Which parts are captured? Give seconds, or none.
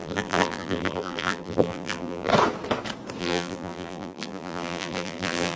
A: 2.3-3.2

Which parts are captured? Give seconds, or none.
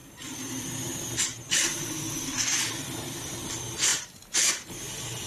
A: 0.6-3.9; 4.5-5.3